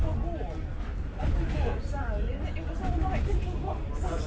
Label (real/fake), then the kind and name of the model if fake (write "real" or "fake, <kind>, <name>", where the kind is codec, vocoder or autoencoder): real